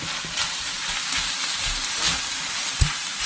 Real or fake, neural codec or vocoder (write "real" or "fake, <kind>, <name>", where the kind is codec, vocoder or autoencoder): real